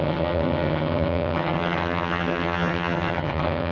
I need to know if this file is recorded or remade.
remade